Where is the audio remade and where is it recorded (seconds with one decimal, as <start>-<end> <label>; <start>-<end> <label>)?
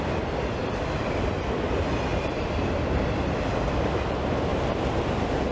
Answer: 0.0-0.6 recorded; 0.6-1.2 remade; 1.2-2.1 recorded; 2.1-3.2 remade; 3.2-4.5 recorded; 4.5-5.0 remade; 5.0-5.5 recorded